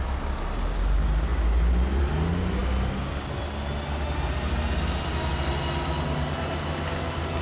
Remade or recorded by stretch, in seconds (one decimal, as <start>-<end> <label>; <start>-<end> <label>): 0.0-7.4 recorded